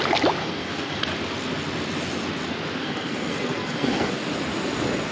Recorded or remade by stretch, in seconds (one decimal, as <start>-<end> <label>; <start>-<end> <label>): 0.0-0.4 recorded; 0.4-1.0 remade; 1.0-2.8 recorded; 2.8-4.1 remade; 4.1-5.1 recorded